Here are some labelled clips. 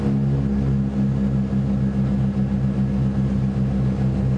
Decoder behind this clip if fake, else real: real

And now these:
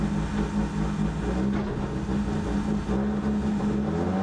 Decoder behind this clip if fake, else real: real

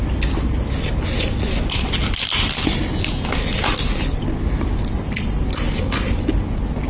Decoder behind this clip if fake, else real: real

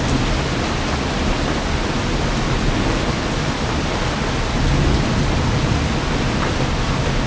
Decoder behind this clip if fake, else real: real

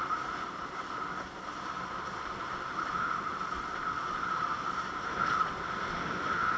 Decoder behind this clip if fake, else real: real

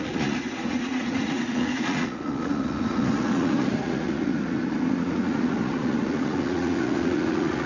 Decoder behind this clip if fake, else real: fake, vocoder, Vocos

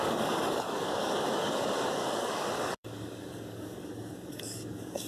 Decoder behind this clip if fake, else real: fake, codec, DAC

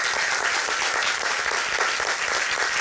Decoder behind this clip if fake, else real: real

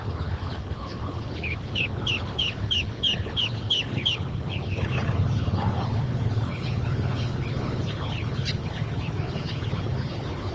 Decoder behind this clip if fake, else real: fake, codec, HILCodec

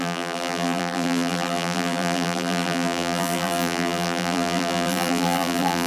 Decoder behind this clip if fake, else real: fake, vocoder, BigVGAN v2